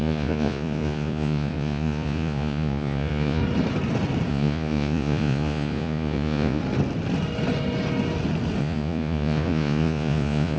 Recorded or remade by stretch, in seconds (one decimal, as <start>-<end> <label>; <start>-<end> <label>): 0.0-3.4 remade; 3.4-4.3 recorded; 4.3-6.6 remade; 6.6-8.6 recorded; 8.6-10.6 remade